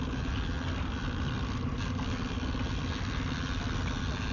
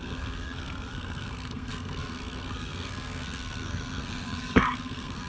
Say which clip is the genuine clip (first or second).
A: first